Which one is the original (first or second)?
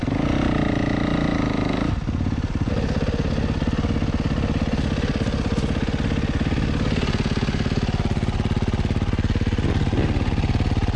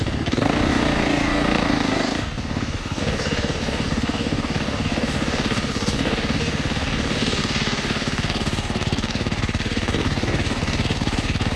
first